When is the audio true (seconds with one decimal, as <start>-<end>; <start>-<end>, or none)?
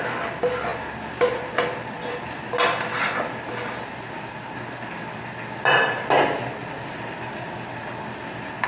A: 0.0-8.7